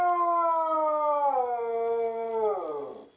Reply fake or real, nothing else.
real